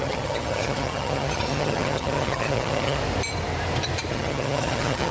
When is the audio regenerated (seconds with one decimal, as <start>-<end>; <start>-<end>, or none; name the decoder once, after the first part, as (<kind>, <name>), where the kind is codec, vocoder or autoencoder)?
0.0-3.0 (vocoder, HiFi-GAN); 4.1-5.1